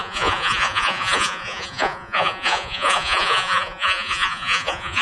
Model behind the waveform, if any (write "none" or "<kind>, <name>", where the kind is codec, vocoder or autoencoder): vocoder, Vocos